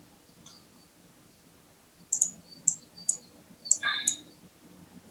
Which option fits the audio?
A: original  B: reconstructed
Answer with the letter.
A